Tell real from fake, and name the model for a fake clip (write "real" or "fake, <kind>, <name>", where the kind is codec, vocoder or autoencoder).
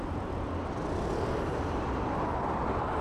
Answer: real